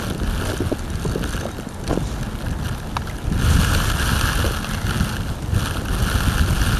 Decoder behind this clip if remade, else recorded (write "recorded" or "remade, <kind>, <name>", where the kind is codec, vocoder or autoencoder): recorded